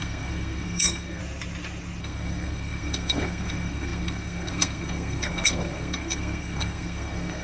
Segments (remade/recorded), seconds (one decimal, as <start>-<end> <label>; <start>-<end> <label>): 0.0-1.2 remade; 1.2-2.0 recorded; 2.0-7.4 remade